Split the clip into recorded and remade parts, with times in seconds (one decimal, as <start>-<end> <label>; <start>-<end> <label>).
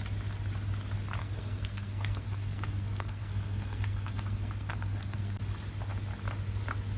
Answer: 0.0-1.2 recorded; 1.2-5.4 remade; 5.4-7.0 recorded